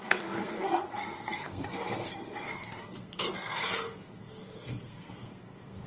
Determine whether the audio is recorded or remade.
remade